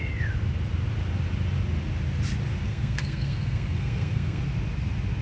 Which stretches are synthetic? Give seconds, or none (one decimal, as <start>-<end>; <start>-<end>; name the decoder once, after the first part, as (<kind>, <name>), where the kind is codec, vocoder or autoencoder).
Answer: 2.6-4.4 (codec, SNAC)